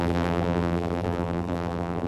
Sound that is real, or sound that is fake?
fake